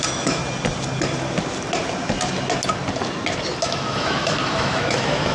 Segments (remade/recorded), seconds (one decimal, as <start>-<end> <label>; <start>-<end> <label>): 0.0-0.4 remade; 0.4-3.6 recorded; 3.6-5.3 remade